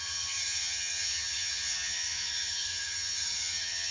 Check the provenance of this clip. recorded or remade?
remade